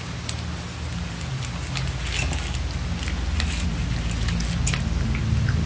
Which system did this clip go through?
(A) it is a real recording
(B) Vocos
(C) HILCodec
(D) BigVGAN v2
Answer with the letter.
A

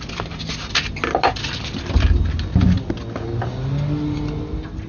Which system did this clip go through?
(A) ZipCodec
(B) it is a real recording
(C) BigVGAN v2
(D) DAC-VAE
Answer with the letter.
B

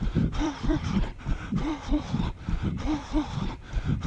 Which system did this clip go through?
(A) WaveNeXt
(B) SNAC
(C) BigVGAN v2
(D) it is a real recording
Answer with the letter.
C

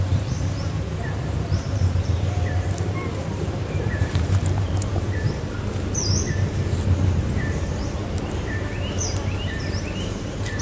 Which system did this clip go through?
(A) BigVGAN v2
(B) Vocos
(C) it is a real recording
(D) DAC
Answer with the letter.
A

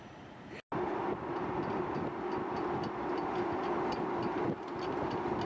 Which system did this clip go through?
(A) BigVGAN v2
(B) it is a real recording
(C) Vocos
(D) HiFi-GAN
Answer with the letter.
B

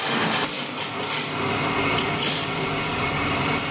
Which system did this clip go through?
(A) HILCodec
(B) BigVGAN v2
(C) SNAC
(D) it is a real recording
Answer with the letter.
B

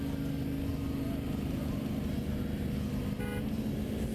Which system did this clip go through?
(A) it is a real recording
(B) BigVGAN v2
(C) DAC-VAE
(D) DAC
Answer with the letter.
A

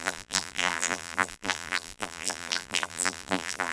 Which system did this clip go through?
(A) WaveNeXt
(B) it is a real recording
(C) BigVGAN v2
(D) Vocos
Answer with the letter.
C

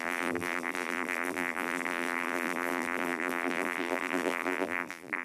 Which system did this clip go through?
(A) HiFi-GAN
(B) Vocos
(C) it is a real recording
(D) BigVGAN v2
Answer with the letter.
D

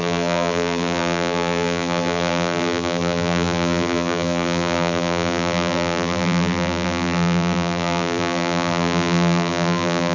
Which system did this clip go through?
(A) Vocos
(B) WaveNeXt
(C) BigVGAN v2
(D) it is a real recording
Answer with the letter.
C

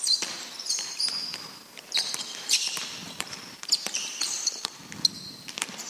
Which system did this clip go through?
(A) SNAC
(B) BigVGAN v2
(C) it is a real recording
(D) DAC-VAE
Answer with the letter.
B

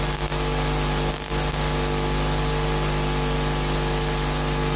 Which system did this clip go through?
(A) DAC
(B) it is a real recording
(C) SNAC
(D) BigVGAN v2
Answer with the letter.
B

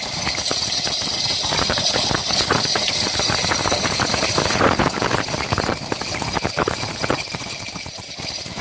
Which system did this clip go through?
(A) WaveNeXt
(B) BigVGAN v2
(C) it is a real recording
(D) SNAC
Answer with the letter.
B